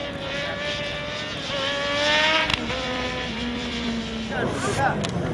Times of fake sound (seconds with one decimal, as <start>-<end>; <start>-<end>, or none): 0.0-0.8; 2.5-4.0

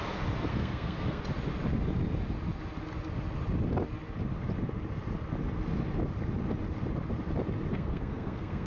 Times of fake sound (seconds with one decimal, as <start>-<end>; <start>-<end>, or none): 0.5-1.2; 7.7-8.7

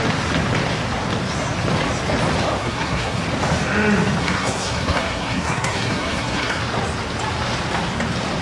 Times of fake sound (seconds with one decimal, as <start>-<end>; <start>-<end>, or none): 2.6-3.2; 4.2-6.6

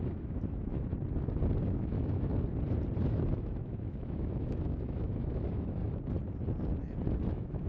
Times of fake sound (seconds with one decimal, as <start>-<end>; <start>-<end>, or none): 0.0-0.9; 1.6-2.3; 3.0-5.8; 7.3-7.7